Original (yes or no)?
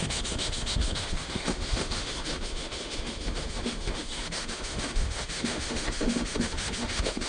no